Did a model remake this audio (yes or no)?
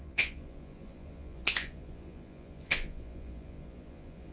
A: yes